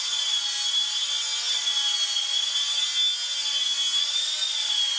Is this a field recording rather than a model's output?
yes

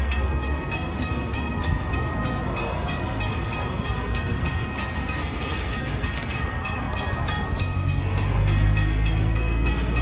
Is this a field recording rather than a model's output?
no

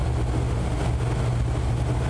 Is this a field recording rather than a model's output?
yes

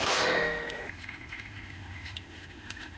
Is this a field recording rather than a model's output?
no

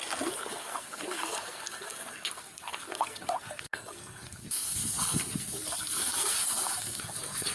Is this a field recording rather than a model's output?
no